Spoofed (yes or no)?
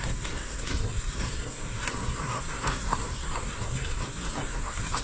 yes